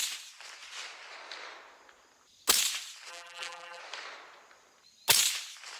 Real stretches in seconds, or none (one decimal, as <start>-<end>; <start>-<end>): 0.0-3.1; 3.8-5.8